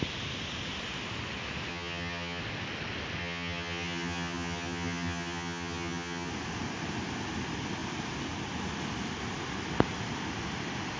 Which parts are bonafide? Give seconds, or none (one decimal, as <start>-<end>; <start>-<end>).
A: 0.0-1.7; 2.4-3.2; 6.3-11.0